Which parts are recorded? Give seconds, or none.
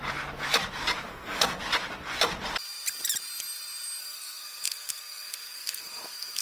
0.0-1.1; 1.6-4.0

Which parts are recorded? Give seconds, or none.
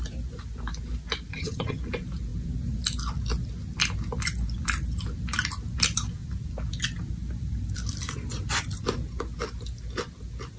0.0-1.3; 1.8-10.6